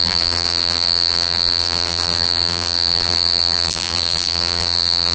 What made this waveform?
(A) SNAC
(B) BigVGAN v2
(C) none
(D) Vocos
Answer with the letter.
B